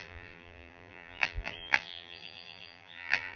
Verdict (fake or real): fake